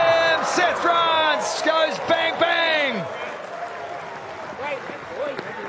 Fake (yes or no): no